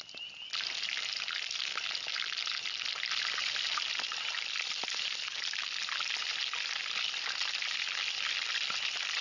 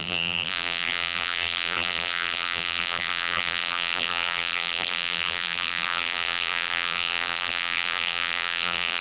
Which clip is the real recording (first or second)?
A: first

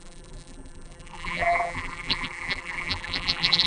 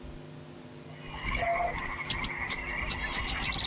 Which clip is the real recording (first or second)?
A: second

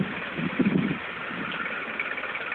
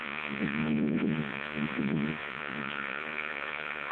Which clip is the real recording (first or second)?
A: first